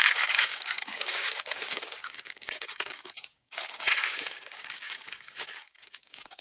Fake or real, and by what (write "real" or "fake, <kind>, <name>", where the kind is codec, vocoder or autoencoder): fake, codec, DAC